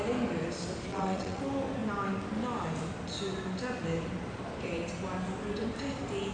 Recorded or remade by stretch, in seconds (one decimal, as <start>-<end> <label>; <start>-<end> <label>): 0.0-0.9 recorded; 0.9-1.4 remade; 1.4-6.3 recorded